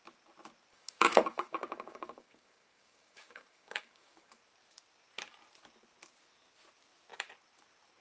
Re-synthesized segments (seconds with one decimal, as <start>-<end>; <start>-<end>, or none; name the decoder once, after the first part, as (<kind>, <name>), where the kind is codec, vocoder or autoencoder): 0.7-4.4 (codec, DAC)